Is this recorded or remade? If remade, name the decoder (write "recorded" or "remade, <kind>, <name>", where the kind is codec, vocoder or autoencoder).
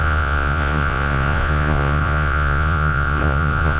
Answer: remade, vocoder, Vocos